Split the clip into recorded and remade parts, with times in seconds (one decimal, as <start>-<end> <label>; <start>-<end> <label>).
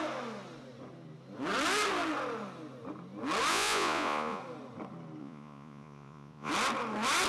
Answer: 0.0-3.5 recorded; 3.5-4.4 remade; 4.4-5.2 recorded; 5.2-6.5 remade; 6.5-7.3 recorded